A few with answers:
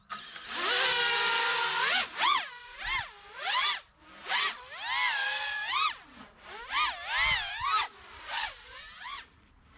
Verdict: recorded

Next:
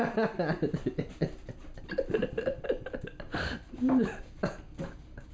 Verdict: recorded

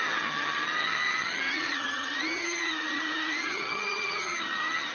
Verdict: remade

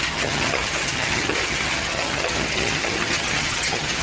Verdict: remade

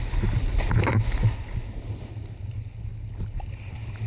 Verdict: recorded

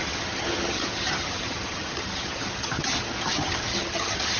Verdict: remade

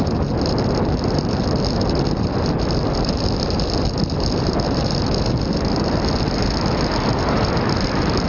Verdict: recorded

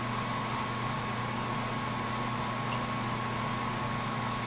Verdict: recorded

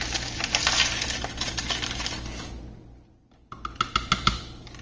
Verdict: recorded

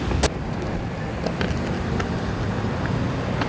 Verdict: recorded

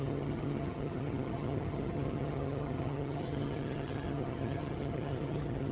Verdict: remade